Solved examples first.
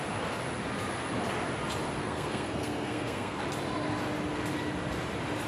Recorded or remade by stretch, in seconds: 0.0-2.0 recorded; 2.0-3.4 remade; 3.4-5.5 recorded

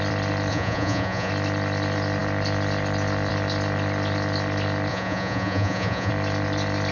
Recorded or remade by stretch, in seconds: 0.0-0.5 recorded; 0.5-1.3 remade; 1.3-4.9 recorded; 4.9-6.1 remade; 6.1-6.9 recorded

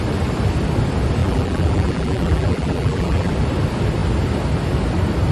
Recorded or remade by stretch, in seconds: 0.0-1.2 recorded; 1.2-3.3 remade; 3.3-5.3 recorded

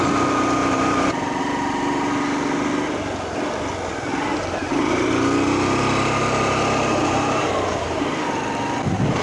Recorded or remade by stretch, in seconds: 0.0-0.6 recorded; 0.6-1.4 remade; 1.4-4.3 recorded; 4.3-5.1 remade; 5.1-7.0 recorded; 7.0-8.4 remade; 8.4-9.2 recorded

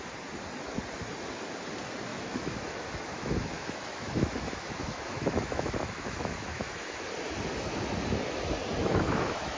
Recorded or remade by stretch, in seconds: 0.0-2.1 recorded; 2.1-7.0 remade; 7.0-8.8 recorded; 8.8-9.6 remade